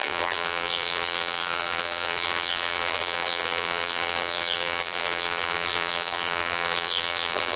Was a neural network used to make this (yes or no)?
yes